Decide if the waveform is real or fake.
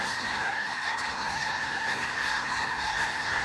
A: fake